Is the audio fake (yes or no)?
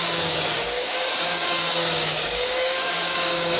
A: yes